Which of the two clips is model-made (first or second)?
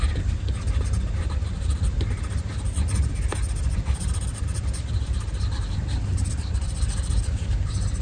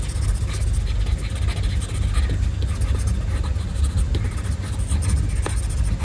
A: first